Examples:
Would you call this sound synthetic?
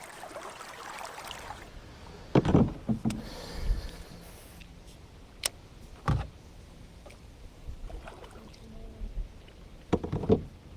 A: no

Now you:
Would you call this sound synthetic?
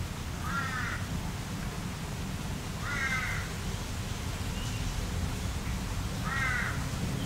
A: no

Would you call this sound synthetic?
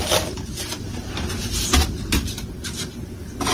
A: no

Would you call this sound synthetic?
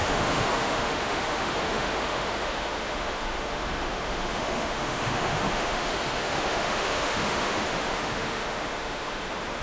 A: yes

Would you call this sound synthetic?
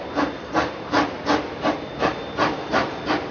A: no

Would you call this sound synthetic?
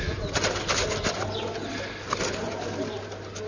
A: no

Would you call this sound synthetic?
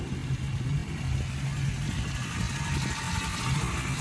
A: no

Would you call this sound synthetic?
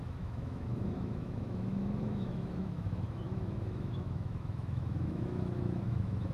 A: yes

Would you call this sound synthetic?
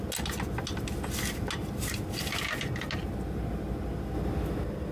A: no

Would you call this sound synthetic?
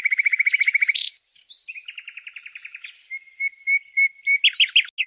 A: no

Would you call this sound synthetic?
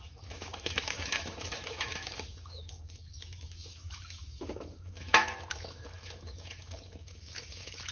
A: yes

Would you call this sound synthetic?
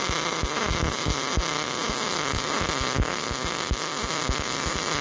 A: no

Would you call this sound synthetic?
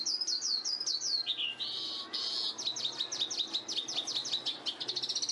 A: no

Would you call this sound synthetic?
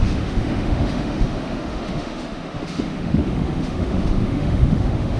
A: yes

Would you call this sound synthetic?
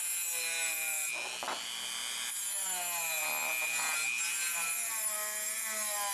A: no